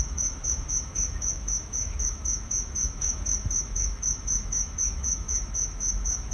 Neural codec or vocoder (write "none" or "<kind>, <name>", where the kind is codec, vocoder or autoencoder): autoencoder, DAC-VAE